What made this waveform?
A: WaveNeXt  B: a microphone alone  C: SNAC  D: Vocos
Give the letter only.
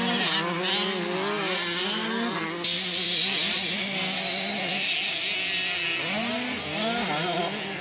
B